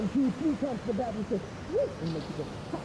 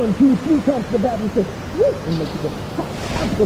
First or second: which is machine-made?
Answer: second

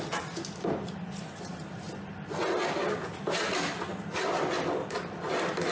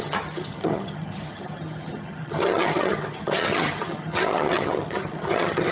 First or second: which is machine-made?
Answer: second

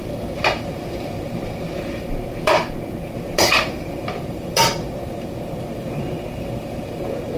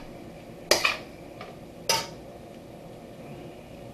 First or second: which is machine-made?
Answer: first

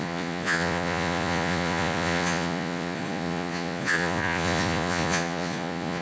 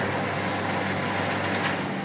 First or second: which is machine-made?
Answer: first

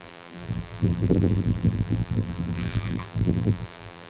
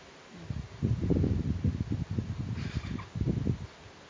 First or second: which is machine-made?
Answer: first